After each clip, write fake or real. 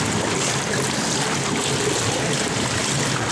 real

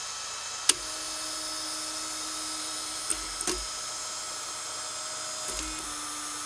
real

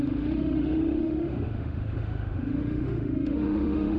fake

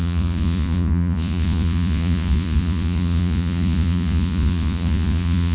fake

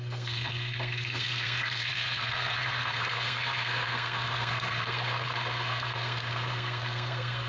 fake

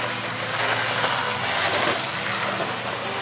real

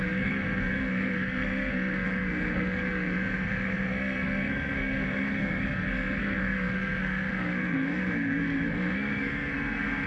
fake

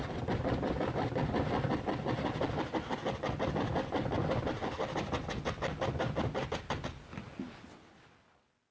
real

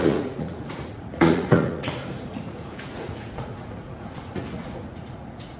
fake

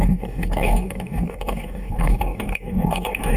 fake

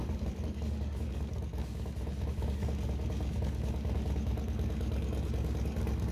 fake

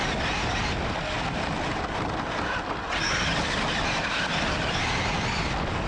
real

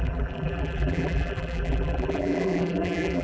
fake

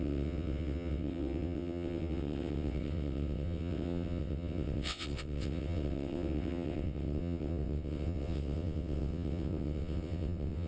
fake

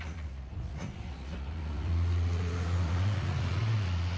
fake